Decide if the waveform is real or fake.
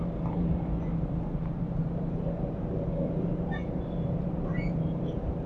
fake